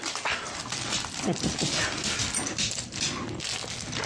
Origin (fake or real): real